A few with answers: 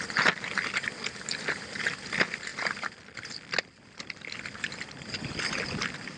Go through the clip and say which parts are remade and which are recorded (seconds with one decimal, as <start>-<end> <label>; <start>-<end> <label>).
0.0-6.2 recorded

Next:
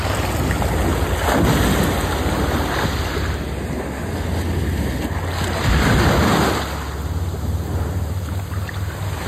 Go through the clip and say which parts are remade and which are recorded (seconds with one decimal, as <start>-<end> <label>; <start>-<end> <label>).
0.0-9.3 recorded

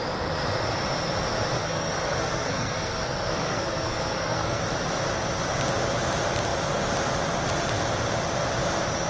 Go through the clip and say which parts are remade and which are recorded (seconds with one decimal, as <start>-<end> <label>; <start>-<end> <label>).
0.0-1.6 recorded; 1.6-4.6 remade; 4.6-9.1 recorded

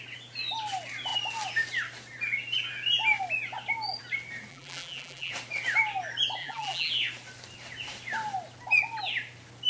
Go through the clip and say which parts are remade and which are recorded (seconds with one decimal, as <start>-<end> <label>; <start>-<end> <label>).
0.0-4.5 recorded; 4.5-5.3 remade; 5.3-6.4 recorded; 6.4-6.9 remade; 6.9-9.7 recorded

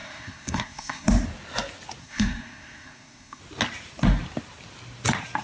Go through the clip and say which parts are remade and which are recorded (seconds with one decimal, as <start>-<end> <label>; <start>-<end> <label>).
0.0-1.1 remade; 1.1-2.0 recorded; 2.0-3.4 remade; 3.4-5.4 recorded